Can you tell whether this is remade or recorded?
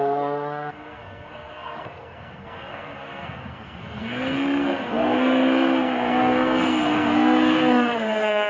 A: remade